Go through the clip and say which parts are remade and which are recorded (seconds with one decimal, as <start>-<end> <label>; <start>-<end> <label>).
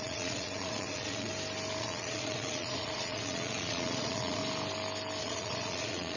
0.0-1.3 remade; 1.3-1.8 recorded; 1.8-4.4 remade; 4.4-5.2 recorded; 5.2-6.2 remade